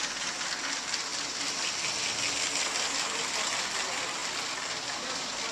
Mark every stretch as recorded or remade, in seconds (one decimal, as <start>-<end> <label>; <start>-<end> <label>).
0.0-5.5 recorded